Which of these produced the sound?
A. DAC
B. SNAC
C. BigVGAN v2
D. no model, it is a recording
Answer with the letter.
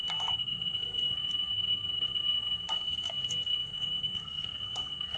B